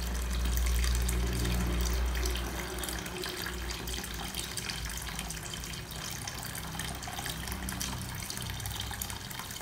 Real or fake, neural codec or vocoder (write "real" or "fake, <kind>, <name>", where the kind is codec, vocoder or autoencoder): real